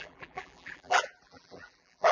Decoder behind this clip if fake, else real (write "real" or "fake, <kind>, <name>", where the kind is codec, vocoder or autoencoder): fake, vocoder, BigVGAN v2